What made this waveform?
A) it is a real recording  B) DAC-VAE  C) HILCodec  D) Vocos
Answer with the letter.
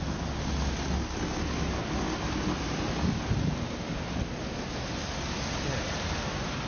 A